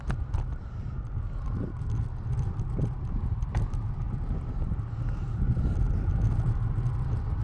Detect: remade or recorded recorded